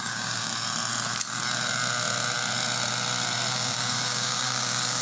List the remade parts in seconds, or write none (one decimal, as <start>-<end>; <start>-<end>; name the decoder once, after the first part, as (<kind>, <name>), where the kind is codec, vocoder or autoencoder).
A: 0.0-0.5 (codec, DAC); 3.5-5.0

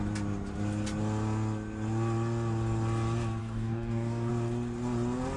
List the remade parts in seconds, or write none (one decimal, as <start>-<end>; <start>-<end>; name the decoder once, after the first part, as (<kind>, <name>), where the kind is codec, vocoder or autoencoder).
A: 3.4-4.3 (codec, DAC)